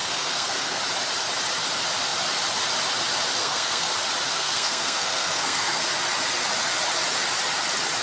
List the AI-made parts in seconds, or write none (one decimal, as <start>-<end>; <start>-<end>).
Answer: 0.0-0.8; 3.4-3.9; 4.3-5.8